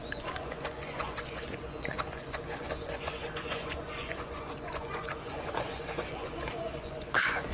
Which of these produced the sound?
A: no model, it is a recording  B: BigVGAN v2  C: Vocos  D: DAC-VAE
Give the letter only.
C